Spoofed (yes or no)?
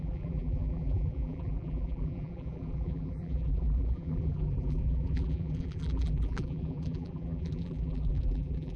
yes